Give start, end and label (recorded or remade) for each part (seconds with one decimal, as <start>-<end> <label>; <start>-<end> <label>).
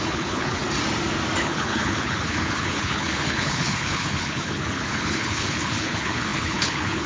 0.0-0.6 remade; 0.6-1.4 recorded; 1.4-7.1 remade